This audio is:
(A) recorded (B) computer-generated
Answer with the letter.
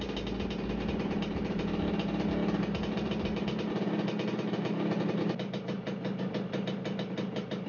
A